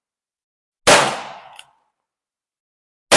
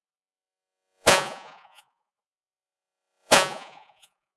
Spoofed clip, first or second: second